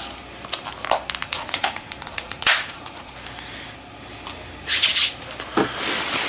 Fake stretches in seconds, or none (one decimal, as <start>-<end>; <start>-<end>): 1.2-3.1